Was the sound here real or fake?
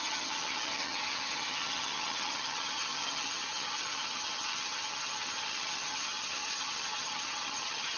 fake